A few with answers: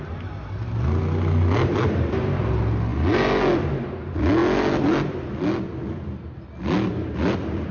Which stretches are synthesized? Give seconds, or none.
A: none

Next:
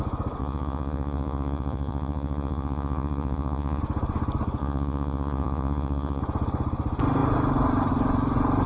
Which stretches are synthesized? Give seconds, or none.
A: 0.4-3.8 (vocoder, Vocos); 4.6-6.2

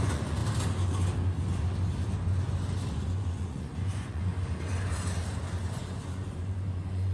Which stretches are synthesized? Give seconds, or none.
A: 0.0-0.4 (vocoder, Vocos); 2.9-4.3; 5.7-7.1

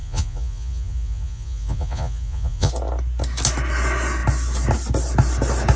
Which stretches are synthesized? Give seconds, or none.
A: 0.0-2.7 (vocoder, Vocos)

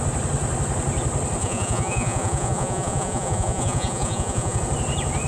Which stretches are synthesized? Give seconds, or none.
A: 1.4-4.6 (vocoder, Vocos)

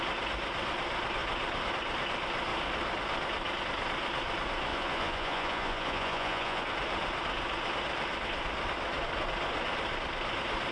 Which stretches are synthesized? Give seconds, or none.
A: 4.7-6.6 (vocoder, Vocos)

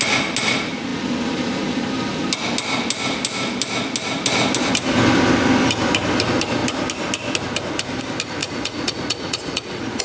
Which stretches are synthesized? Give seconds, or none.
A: 8.4-10.0 (vocoder, Vocos)

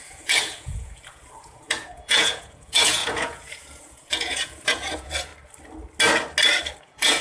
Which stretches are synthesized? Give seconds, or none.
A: 0.0-5.3 (vocoder, Vocos); 6.8-7.2